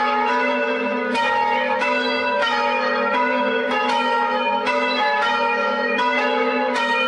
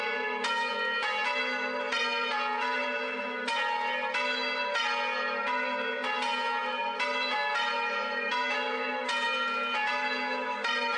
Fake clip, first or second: first